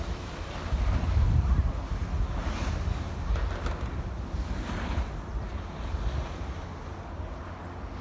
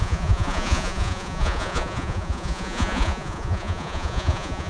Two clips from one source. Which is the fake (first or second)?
second